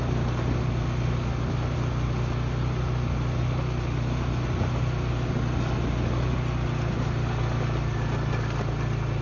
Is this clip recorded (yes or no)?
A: yes